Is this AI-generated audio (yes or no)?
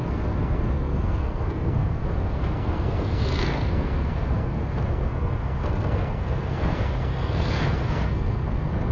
yes